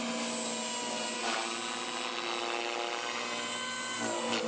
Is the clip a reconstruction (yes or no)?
no